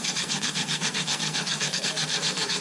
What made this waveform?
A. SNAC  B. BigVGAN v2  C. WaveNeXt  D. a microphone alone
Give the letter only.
A